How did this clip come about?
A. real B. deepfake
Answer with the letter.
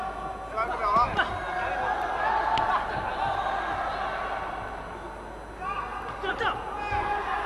A